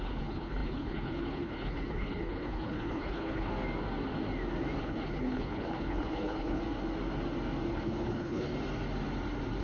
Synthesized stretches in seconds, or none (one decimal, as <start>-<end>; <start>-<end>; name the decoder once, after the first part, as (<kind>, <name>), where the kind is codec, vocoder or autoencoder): 0.0-3.5 (codec, HILCodec); 4.8-6.6; 7.7-8.5